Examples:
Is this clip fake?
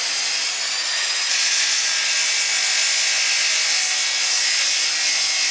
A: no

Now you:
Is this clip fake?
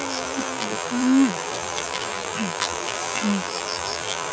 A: yes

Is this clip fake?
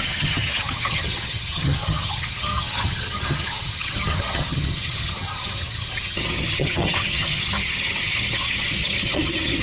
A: yes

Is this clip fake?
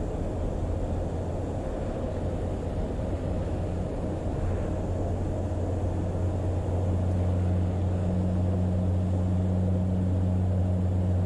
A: no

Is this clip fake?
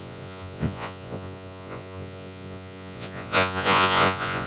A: yes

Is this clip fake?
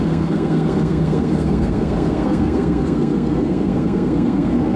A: yes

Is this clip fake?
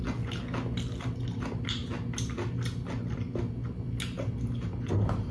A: no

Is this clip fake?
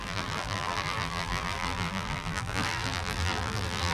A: yes